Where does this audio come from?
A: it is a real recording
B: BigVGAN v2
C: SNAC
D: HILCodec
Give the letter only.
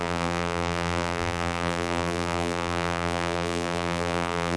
B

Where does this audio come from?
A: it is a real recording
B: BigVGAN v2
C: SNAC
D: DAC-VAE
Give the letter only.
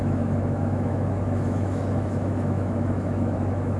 D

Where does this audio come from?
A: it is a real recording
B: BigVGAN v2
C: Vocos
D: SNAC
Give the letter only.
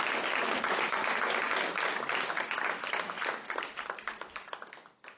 A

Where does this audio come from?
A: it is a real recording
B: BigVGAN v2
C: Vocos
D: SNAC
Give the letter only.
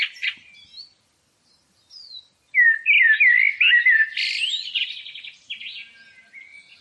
A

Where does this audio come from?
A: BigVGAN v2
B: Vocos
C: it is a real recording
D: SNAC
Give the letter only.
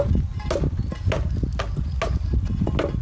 C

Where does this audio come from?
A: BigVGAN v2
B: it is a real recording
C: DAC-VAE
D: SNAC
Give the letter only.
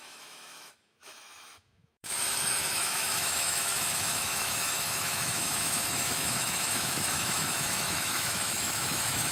C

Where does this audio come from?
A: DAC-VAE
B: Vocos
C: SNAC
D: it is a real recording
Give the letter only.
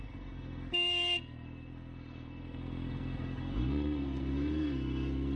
C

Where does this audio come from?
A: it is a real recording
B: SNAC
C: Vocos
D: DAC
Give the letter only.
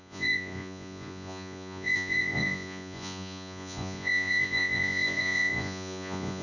C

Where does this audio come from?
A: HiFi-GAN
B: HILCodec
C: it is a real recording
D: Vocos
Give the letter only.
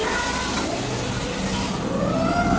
C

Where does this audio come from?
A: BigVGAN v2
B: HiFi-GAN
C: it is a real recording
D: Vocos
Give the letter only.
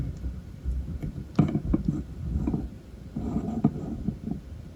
C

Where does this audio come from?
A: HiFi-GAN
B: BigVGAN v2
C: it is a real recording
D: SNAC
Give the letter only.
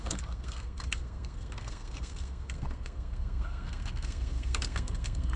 D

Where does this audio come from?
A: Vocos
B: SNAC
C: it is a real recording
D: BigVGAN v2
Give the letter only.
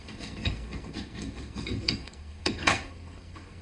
B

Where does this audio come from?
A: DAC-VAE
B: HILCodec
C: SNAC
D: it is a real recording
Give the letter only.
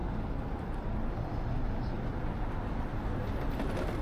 D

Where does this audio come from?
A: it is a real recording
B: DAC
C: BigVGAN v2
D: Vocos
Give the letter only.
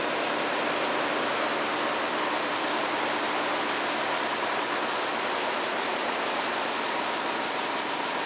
A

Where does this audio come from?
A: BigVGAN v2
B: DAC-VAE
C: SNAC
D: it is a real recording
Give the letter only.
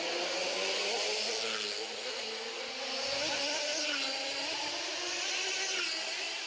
D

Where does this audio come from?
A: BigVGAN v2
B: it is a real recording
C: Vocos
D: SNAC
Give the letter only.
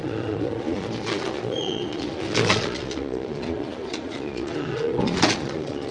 C